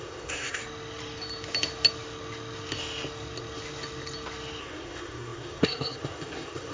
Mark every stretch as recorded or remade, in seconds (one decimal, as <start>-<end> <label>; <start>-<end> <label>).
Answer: 0.0-0.6 remade; 0.6-4.6 recorded; 4.6-6.7 remade